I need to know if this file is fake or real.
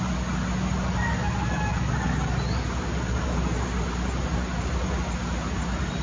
real